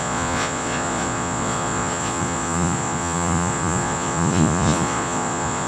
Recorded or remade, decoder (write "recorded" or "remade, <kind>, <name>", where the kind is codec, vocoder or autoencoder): remade, vocoder, Vocos